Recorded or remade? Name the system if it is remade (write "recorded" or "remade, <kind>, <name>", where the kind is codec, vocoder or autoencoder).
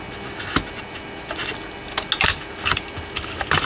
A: recorded